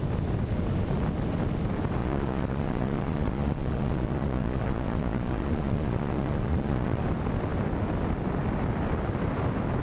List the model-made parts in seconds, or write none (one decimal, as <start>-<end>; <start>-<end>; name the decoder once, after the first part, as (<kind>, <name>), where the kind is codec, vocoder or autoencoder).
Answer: 2.0-7.0 (vocoder, Vocos)